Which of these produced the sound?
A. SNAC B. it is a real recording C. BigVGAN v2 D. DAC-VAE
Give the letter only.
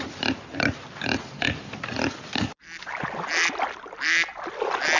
B